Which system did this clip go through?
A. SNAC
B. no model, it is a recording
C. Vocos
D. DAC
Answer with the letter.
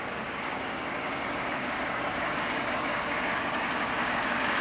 D